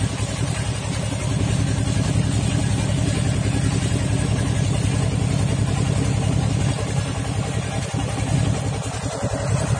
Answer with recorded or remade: recorded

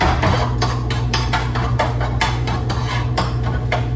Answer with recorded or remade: recorded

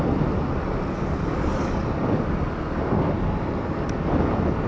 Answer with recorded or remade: recorded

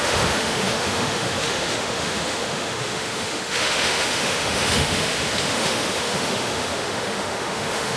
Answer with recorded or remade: remade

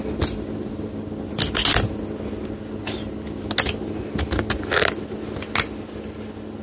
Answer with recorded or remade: recorded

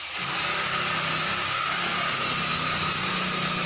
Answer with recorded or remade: recorded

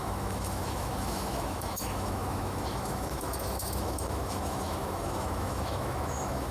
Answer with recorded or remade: remade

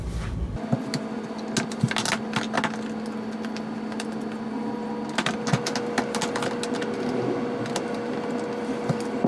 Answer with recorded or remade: recorded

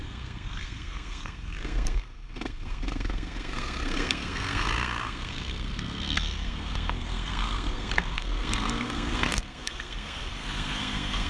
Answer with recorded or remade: remade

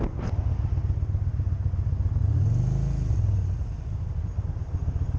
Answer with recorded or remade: recorded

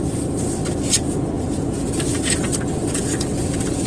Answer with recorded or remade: recorded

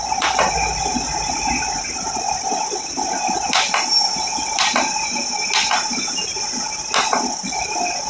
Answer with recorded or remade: recorded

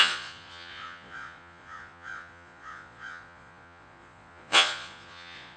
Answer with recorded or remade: remade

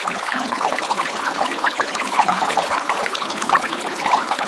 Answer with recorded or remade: remade